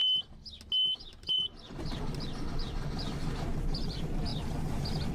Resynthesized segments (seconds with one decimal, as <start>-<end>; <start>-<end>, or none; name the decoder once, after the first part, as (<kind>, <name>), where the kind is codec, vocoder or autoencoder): 1.0-5.1 (vocoder, BigVGAN v2)